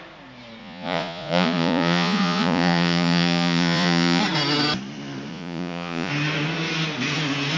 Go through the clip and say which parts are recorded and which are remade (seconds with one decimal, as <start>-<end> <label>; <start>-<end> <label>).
0.0-0.6 recorded; 0.6-4.2 remade; 4.2-5.3 recorded; 5.3-6.1 remade; 6.1-7.6 recorded